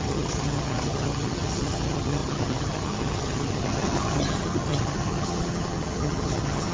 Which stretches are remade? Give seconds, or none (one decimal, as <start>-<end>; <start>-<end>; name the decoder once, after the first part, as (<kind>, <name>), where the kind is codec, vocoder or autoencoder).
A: 0.0-6.7 (vocoder, HiFi-GAN)